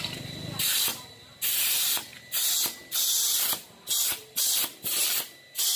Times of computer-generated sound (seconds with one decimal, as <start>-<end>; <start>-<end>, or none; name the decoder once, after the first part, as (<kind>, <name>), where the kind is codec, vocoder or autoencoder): none